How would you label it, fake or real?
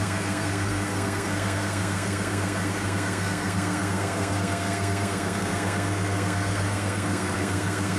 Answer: fake